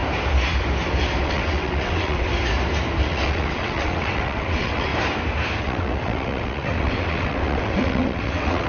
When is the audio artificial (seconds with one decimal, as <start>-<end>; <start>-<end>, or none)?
1.2-2.3; 3.0-4.9; 5.6-8.7